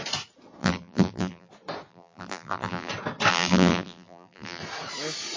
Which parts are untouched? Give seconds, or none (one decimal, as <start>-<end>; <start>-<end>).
0.0-0.6; 1.5-1.9; 2.9-3.3; 4.6-5.4